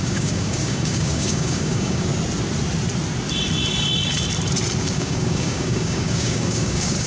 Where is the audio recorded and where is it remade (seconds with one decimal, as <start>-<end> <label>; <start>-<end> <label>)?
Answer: 0.0-2.1 remade; 2.1-4.8 recorded; 4.8-7.1 remade